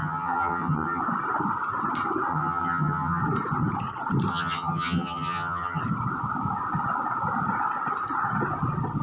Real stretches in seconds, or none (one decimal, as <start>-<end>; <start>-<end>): 1.0-2.3; 3.2-4.3; 5.8-9.0